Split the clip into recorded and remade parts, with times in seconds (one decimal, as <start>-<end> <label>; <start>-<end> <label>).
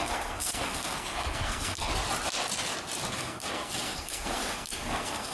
0.0-1.9 remade; 1.9-3.1 recorded; 3.1-5.3 remade